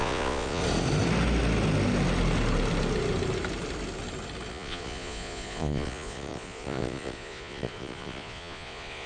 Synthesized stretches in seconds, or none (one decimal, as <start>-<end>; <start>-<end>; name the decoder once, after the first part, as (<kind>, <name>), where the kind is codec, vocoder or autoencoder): 0.0-0.6 (vocoder, Vocos); 4.5-9.1